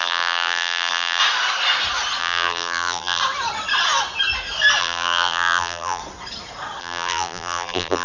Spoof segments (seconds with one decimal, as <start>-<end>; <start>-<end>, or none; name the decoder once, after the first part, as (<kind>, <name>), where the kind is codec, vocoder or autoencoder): 0.0-1.2 (vocoder, BigVGAN v2); 2.2-3.2; 4.8-6.0; 6.8-8.0